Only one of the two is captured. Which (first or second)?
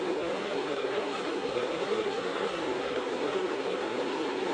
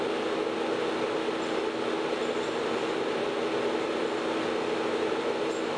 second